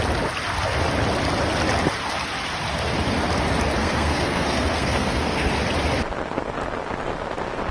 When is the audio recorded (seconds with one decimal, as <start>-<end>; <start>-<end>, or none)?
0.0-3.8; 5.5-7.7